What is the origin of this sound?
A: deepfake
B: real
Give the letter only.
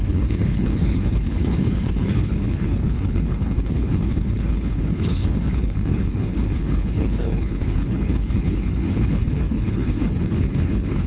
A